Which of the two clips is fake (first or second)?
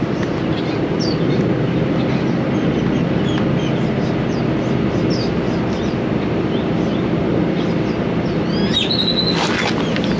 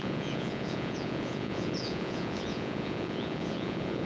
second